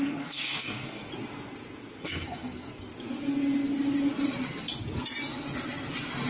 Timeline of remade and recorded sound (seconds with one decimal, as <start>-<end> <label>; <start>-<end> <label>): 0.0-1.1 remade; 1.1-2.0 recorded; 2.0-2.9 remade; 2.9-6.3 recorded